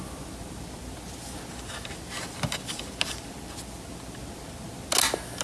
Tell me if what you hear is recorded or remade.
recorded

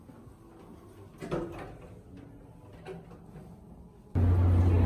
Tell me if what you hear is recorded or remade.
recorded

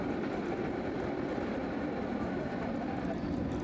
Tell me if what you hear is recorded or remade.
recorded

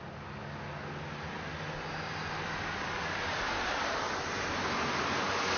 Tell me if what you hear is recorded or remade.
recorded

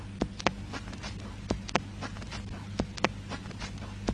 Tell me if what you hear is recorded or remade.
recorded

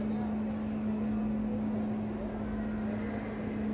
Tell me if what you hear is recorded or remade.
recorded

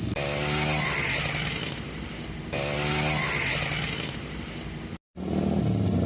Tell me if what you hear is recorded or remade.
recorded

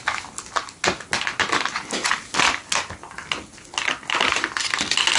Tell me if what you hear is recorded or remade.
recorded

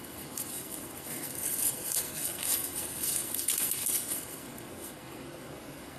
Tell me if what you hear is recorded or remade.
remade